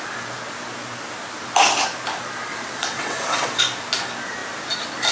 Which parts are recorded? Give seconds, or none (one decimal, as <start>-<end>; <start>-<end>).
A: 0.0-2.5; 3.6-5.1